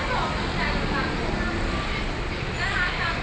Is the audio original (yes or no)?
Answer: yes